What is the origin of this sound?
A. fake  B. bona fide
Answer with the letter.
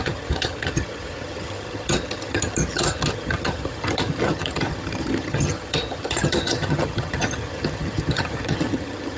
A